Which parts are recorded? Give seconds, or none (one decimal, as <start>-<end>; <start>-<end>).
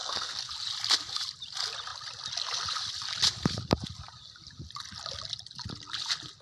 0.5-6.4